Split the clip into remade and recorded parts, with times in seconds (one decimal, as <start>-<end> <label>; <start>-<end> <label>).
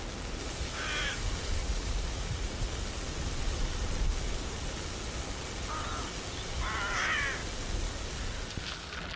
0.0-1.6 recorded; 1.6-2.6 remade; 2.6-9.2 recorded